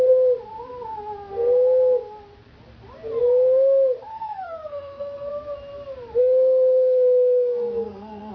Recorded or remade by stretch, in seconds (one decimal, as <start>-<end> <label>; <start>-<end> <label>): 0.0-4.1 recorded; 4.1-5.3 remade; 5.3-6.2 recorded; 6.2-8.3 remade